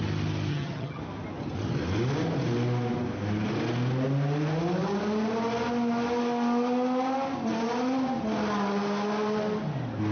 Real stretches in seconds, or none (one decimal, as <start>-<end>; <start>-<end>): 0.0-0.5; 1.0-10.1

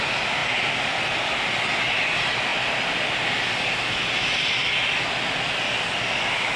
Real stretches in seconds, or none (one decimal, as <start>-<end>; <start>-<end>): 0.0-0.4; 1.0-6.6